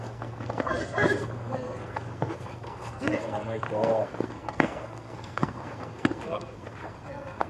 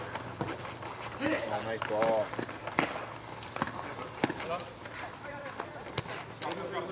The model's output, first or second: first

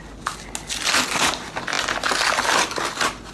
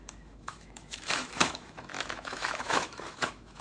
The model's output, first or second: second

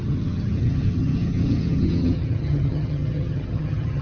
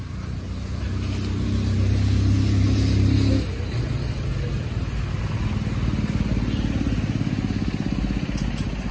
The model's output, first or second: first